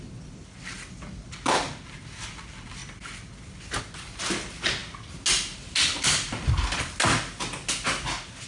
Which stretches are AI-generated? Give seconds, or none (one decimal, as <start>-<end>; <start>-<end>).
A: none